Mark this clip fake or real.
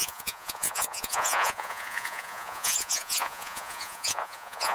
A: fake